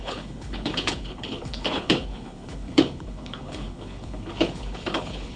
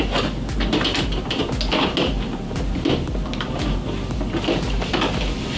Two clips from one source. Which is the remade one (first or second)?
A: first